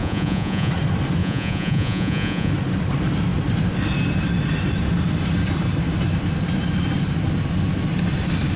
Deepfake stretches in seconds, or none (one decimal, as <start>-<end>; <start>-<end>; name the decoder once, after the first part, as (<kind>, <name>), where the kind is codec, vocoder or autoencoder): 0.0-0.7 (vocoder, Vocos); 1.2-2.5